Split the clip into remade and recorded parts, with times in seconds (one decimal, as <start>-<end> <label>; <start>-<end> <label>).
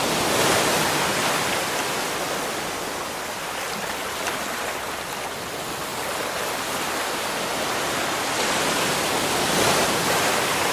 0.0-10.7 recorded